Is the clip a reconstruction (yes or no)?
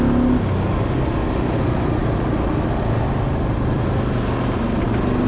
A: no